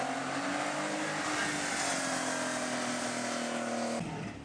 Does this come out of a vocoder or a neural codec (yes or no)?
no